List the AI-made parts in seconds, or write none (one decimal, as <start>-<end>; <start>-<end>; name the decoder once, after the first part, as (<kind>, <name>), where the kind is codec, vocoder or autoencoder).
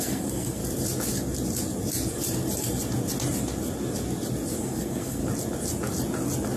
0.0-0.6 (codec, SNAC); 4.6-5.2